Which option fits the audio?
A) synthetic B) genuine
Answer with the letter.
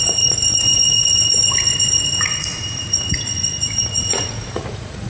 A